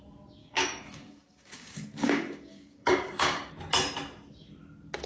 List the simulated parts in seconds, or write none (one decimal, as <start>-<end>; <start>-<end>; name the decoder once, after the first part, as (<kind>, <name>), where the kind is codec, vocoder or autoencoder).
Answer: 0.4-3.5 (codec, DAC)